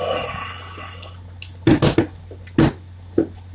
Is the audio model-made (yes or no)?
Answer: no